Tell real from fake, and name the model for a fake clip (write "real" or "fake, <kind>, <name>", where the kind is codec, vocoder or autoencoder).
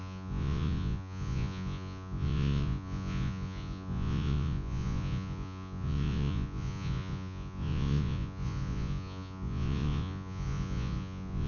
fake, vocoder, Vocos